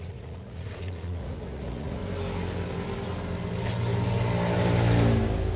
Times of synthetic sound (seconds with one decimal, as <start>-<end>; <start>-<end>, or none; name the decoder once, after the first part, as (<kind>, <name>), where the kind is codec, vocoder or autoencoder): 0.0-2.0 (vocoder, Vocos)